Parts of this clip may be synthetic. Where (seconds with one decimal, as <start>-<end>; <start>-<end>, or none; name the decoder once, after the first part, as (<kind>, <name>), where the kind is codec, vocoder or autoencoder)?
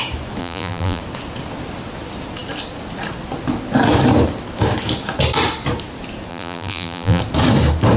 0.4-1.0 (vocoder, BigVGAN v2); 6.3-7.2